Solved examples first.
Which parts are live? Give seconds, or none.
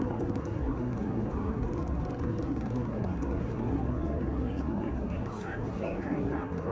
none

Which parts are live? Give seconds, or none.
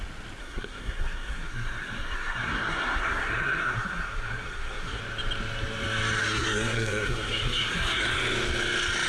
0.0-0.4; 5.0-6.2; 8.1-9.1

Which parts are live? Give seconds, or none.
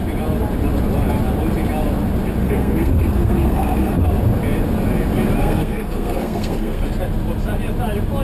0.0-2.4; 4.0-5.4; 6.8-8.2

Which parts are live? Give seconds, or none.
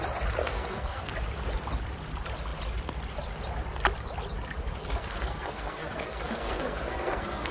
0.0-0.4; 1.1-4.8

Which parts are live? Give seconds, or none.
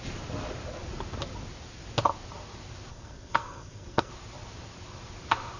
0.0-2.9; 4.1-5.6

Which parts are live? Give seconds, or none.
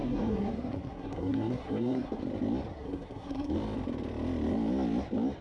2.2-2.7; 3.5-5.4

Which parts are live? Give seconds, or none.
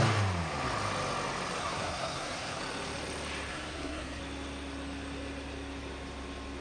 0.0-1.6; 2.6-3.5; 4.2-6.6